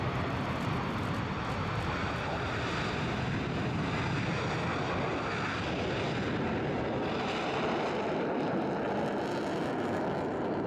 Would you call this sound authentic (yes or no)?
yes